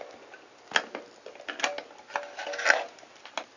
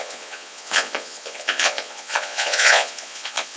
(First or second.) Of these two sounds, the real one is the first